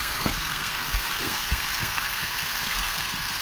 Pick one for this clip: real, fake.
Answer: fake